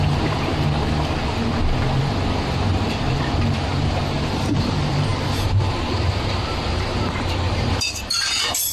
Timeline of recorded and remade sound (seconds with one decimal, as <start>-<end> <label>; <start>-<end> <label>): 0.0-0.5 remade; 0.5-2.0 recorded; 2.0-8.7 remade